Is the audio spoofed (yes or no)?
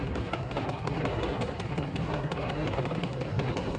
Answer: yes